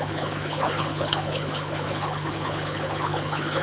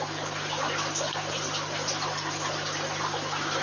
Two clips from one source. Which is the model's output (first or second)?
first